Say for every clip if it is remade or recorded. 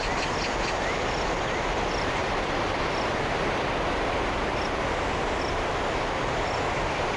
recorded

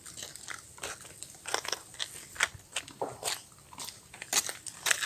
recorded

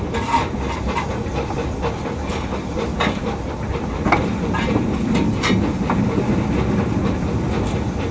recorded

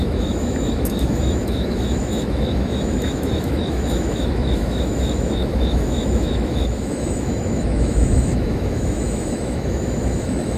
remade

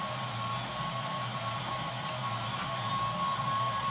recorded